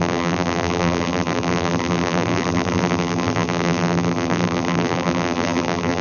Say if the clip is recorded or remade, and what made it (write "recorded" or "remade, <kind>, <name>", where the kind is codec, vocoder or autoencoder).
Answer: remade, vocoder, BigVGAN v2